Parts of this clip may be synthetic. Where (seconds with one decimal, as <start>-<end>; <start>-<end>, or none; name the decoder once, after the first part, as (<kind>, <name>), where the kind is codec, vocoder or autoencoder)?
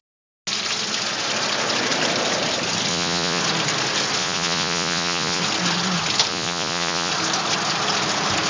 2.9-3.4 (vocoder, Vocos); 4.2-5.4; 6.3-7.1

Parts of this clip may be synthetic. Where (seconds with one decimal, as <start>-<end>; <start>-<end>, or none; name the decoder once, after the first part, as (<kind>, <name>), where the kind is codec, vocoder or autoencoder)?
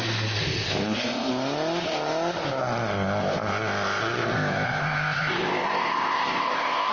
0.4-1.3 (codec, ZipCodec); 2.6-6.9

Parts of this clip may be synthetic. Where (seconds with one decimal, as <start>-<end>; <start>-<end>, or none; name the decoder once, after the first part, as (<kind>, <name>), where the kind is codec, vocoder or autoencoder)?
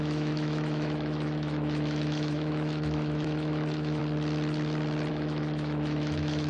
0.0-4.0 (autoencoder, DAC-VAE); 5.1-6.5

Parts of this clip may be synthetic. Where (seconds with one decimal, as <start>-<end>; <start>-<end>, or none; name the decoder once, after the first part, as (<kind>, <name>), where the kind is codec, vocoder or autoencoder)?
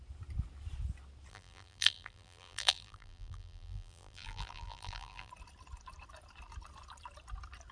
1.3-5.3 (vocoder, BigVGAN v2)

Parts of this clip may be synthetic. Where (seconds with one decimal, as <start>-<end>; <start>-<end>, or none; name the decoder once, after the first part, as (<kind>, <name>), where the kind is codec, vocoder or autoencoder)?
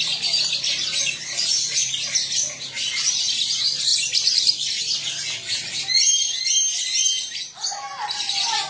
none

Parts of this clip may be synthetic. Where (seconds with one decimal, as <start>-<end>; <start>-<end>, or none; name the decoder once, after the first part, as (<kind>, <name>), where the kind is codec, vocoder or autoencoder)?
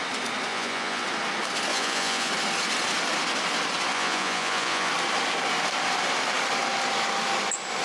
0.5-1.0 (vocoder, Vocos); 1.7-2.3; 3.9-4.9